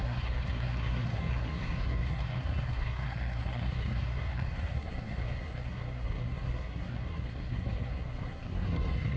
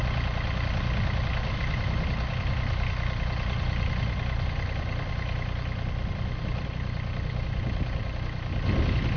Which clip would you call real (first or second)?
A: second